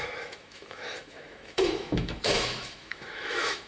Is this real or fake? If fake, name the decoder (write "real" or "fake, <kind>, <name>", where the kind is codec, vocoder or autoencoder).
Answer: fake, autoencoder, DAC-VAE